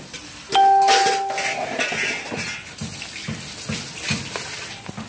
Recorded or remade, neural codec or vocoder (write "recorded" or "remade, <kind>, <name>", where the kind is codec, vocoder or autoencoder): recorded